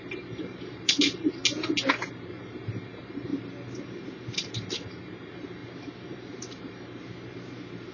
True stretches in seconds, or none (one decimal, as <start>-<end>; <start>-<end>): 1.4-2.1; 3.3-3.8